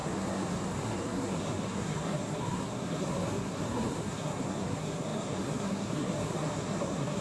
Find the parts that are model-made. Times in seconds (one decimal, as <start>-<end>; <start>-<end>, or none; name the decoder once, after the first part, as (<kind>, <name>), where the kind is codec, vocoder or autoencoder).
0.0-7.2 (codec, SNAC)